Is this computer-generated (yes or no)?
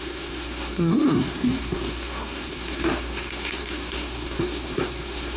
yes